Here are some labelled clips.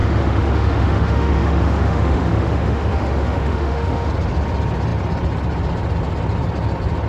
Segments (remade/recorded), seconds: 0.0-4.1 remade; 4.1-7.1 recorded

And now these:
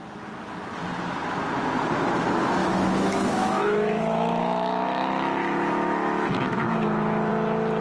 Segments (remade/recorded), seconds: 0.0-2.6 recorded; 2.6-7.3 remade; 7.3-7.8 recorded

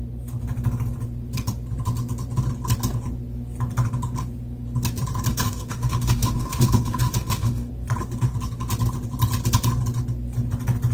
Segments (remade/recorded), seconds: 0.0-5.3 recorded; 5.3-7.7 remade; 7.7-10.9 recorded

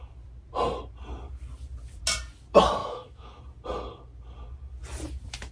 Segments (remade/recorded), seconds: 0.0-2.8 recorded; 2.8-3.4 remade; 3.4-5.5 recorded